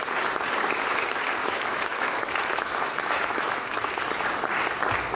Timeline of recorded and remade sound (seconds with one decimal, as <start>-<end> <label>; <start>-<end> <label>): 0.0-1.4 recorded; 1.4-3.9 remade; 3.9-5.1 recorded